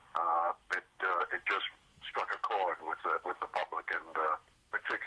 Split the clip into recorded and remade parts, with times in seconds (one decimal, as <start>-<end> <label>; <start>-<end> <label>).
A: 0.0-1.9 recorded; 1.9-5.1 remade